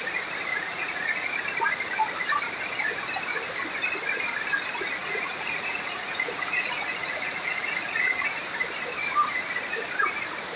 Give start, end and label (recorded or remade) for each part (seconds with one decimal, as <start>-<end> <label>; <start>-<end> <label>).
0.0-0.5 recorded; 0.5-1.4 remade; 1.4-5.0 recorded; 5.0-8.4 remade; 8.4-10.6 recorded